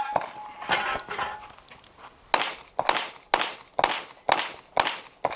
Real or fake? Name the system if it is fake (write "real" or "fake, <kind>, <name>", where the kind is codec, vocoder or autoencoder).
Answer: real